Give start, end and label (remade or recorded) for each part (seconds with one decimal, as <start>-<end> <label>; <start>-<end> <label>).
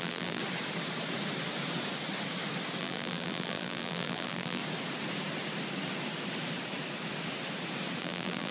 0.0-0.4 remade; 0.4-2.8 recorded; 2.8-4.6 remade; 4.6-8.0 recorded; 8.0-8.5 remade